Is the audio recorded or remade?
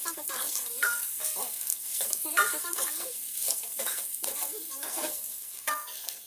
remade